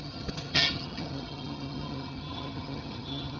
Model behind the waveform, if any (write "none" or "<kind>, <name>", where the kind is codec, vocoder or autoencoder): vocoder, HiFi-GAN